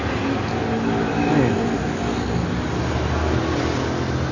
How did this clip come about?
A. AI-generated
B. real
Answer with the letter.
B